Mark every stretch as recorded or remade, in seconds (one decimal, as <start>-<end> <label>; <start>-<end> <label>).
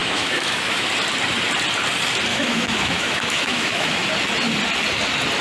0.0-0.9 remade; 0.9-2.3 recorded; 2.3-4.1 remade; 4.1-5.4 recorded